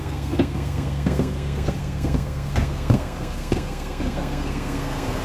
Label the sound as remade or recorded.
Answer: remade